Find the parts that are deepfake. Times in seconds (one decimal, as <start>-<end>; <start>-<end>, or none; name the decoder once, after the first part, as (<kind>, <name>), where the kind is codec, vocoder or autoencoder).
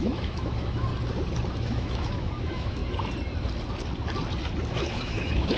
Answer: 0.0-0.9 (autoencoder, DAC-VAE); 1.5-2.8; 4.7-5.6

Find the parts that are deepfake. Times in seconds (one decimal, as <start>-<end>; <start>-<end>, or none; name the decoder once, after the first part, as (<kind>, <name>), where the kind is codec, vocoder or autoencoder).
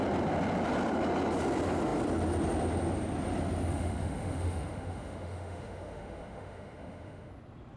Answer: 3.7-7.3 (autoencoder, DAC-VAE)